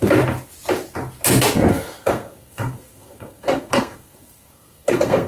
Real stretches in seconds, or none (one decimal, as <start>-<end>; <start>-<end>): 0.0-1.7